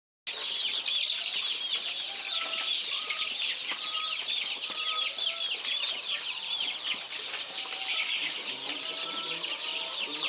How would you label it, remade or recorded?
recorded